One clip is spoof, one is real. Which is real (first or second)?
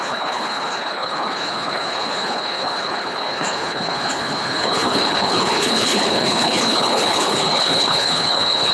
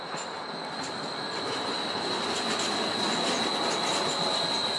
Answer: second